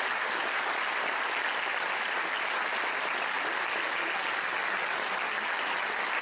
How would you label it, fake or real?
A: real